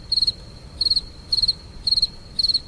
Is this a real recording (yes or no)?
no